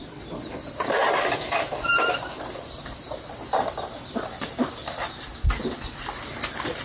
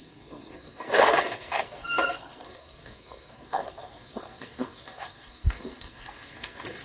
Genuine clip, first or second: first